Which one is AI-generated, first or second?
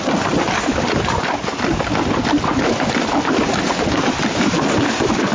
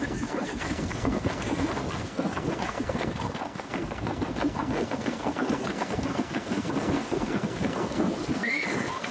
second